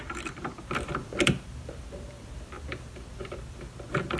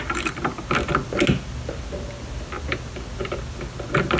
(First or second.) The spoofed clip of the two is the first